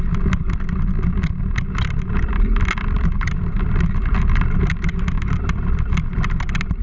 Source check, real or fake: real